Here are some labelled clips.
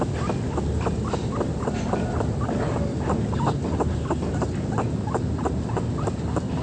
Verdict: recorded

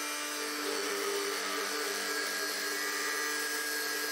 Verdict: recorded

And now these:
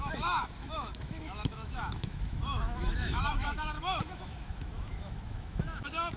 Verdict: remade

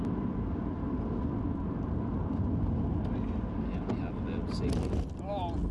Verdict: recorded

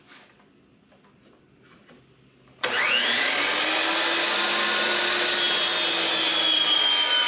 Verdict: recorded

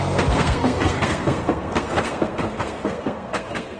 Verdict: remade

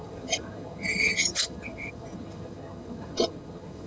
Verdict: remade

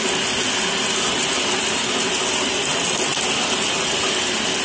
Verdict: recorded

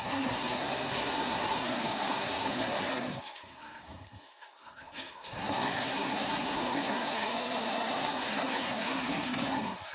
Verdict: remade